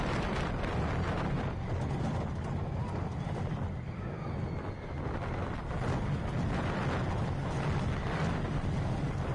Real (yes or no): yes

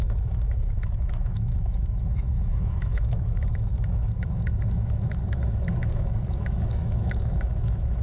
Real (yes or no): no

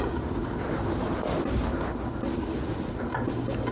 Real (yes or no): yes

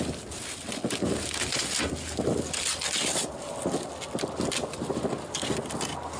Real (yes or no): yes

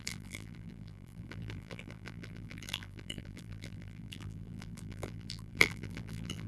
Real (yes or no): no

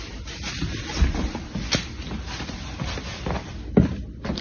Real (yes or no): yes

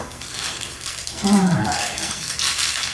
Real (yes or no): no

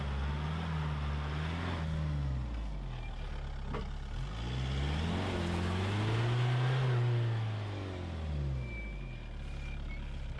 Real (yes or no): yes